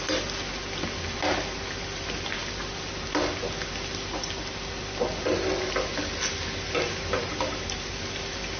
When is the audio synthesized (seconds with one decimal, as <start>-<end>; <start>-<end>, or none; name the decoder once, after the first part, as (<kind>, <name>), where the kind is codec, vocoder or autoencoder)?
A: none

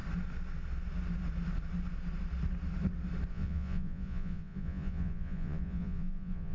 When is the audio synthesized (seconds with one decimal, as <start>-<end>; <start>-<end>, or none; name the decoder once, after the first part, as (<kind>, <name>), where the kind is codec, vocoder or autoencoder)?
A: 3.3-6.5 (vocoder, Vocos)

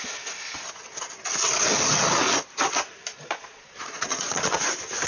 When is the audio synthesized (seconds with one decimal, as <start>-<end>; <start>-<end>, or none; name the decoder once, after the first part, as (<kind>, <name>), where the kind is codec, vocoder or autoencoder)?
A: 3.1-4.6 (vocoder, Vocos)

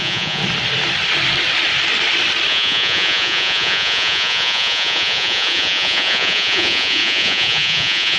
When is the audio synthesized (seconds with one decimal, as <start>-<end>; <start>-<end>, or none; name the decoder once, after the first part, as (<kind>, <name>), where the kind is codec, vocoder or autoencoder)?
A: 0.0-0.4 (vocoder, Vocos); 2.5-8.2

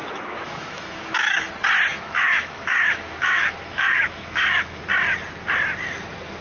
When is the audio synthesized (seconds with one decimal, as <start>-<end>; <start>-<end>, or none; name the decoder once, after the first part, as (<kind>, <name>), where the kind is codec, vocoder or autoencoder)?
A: 0.0-1.5 (autoencoder, DAC-VAE); 1.9-4.8

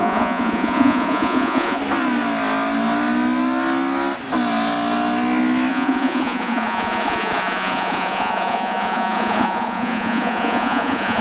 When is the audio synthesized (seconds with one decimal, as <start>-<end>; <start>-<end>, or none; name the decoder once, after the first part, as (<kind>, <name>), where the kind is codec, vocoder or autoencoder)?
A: 0.0-1.8 (vocoder, Vocos); 5.7-11.2

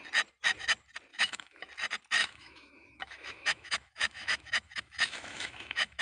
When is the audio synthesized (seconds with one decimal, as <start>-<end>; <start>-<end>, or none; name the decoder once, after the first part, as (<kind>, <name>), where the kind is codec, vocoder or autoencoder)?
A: 1.1-1.7 (autoencoder, DAC-VAE); 2.2-6.0

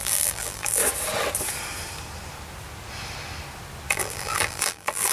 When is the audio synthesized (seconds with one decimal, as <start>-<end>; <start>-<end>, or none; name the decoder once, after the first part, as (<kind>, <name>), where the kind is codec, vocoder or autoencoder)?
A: 0.0-0.8 (vocoder, BigVGAN v2); 3.9-5.1